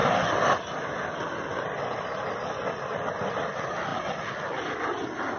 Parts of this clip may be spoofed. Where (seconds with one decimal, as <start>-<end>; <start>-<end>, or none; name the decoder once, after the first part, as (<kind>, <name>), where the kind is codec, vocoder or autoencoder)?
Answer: none